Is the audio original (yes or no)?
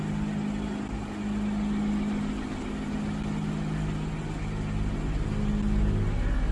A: yes